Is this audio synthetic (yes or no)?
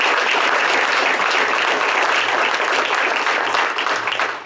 no